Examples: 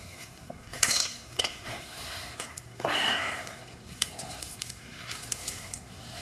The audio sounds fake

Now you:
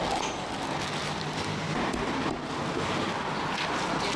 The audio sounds real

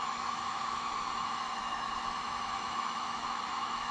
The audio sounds fake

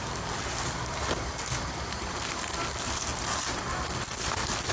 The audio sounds real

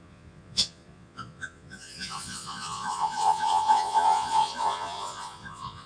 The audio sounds fake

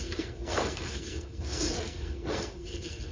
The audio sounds fake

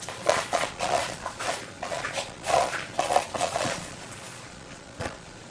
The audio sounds fake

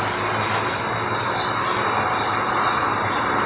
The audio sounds real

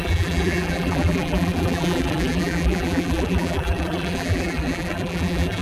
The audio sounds fake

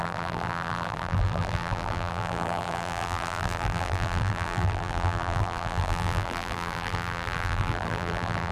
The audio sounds fake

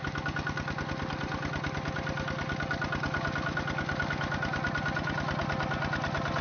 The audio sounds real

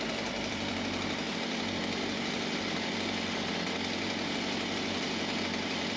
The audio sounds fake